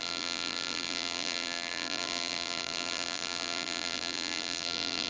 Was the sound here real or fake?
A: fake